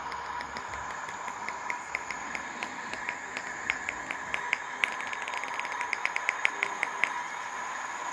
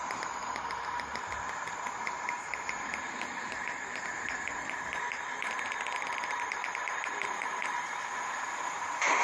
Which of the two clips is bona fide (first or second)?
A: first